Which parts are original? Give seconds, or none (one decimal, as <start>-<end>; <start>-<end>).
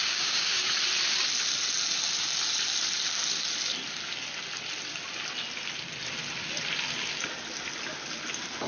0.7-8.7